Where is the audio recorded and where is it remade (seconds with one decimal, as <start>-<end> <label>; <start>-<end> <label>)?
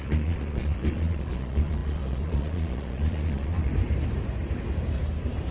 0.0-3.7 remade; 3.7-5.5 recorded